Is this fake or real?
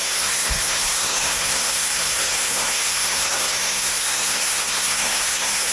fake